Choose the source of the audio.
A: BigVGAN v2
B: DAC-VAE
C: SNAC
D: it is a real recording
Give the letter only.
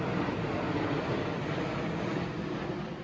D